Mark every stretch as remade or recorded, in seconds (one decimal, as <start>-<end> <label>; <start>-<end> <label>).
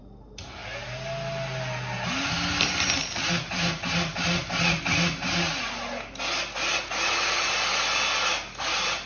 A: 0.0-9.1 recorded